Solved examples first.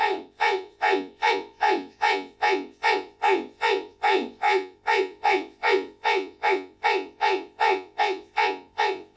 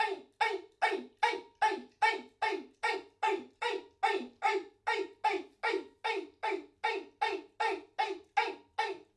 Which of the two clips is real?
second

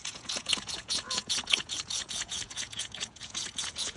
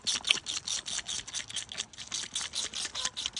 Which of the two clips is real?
second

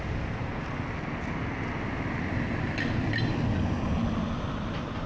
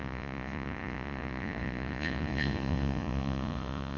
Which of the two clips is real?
first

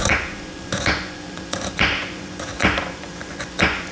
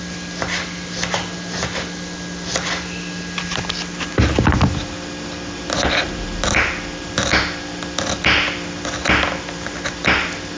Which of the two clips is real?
second